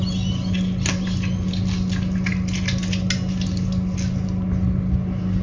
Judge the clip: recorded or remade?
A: recorded